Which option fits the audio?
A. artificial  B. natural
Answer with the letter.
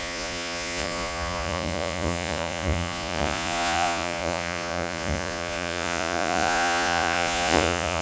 A